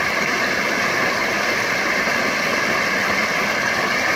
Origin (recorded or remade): recorded